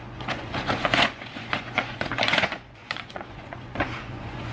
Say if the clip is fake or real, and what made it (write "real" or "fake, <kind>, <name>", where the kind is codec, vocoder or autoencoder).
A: fake, vocoder, Vocos